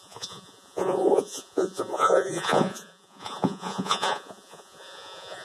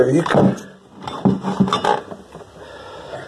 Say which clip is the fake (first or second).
first